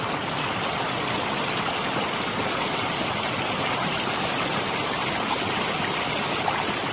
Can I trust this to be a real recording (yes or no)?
yes